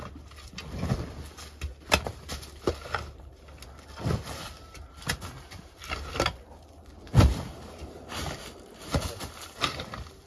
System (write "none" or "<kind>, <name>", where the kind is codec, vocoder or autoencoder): none